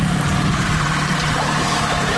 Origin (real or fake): fake